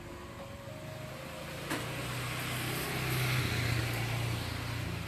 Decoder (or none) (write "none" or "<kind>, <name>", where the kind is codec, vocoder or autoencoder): none